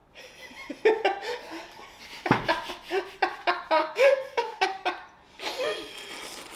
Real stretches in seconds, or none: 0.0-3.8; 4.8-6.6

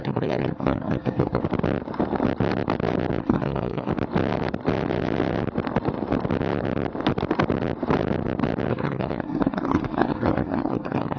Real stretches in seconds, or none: 1.4-3.2; 3.9-8.7

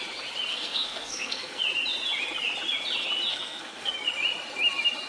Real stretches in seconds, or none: 0.0-0.5; 1.6-3.3; 3.9-5.1

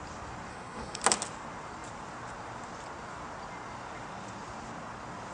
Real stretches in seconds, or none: 0.0-0.5; 1.0-5.3

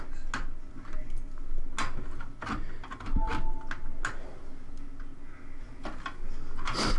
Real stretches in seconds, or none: 0.0-7.0

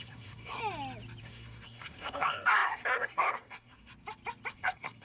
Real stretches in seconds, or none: 0.6-1.2; 3.9-4.5